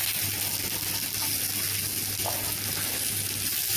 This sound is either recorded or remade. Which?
recorded